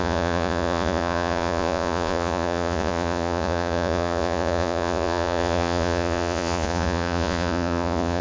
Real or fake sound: fake